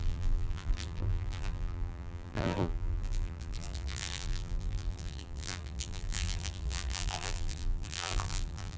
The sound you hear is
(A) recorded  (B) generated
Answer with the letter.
B